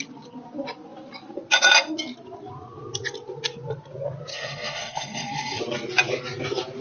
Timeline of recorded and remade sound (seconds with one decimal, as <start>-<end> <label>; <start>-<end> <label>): 0.0-4.3 recorded; 4.3-5.6 remade; 5.6-6.8 recorded